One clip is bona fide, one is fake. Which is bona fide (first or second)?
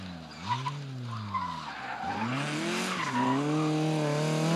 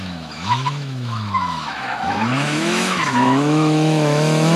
first